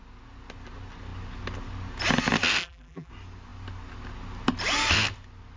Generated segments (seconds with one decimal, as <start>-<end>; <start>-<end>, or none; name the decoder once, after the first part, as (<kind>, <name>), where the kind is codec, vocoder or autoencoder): 2.6-3.1 (vocoder, BigVGAN v2)